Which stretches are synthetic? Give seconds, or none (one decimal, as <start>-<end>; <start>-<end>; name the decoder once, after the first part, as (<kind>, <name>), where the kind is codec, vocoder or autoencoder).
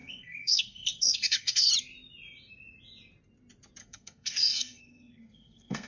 0.0-1.7 (codec, SNAC); 3.8-5.9